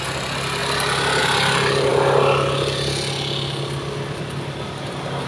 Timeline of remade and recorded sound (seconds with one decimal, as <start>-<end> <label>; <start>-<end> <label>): 0.0-5.3 recorded